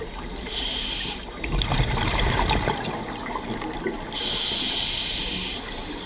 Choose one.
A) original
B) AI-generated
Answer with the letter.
A